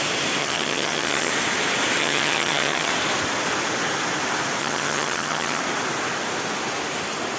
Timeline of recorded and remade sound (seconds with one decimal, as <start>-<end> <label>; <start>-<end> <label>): 0.0-0.4 recorded; 0.4-1.3 remade; 1.3-2.0 recorded; 2.0-2.9 remade; 2.9-4.6 recorded; 4.6-5.6 remade; 5.6-7.4 recorded